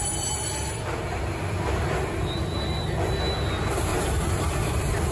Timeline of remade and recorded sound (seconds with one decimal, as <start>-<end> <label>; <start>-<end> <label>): 0.0-3.9 recorded; 3.9-5.1 remade